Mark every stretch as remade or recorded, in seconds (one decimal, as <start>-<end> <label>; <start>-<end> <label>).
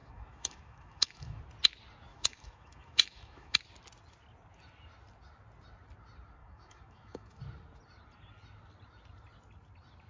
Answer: 0.0-1.4 remade; 1.4-2.1 recorded; 2.1-3.6 remade; 3.6-6.4 recorded; 6.4-7.4 remade; 7.4-10.1 recorded